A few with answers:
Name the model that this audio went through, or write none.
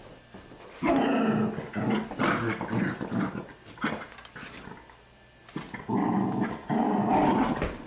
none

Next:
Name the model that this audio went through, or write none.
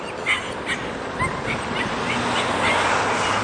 none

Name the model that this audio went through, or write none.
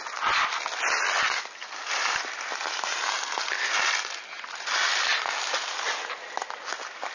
none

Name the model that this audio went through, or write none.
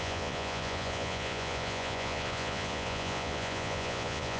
vocoder, Vocos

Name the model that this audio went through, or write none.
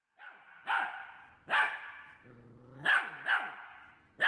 none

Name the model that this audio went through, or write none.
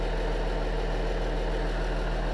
none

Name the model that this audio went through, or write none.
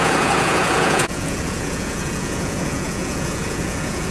vocoder, Vocos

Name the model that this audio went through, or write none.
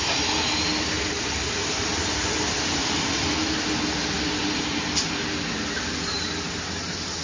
none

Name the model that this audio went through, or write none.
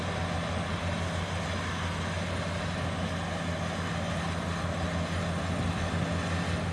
none